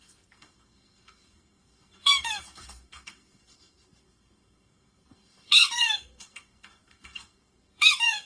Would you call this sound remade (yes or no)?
yes